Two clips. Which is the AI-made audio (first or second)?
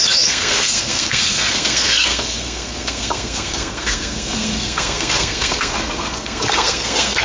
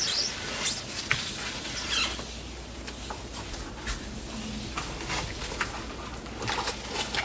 first